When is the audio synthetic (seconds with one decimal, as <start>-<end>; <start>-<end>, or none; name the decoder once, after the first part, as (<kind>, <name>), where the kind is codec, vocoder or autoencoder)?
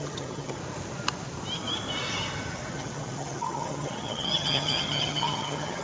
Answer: 0.0-0.6 (vocoder, HiFi-GAN); 2.7-5.8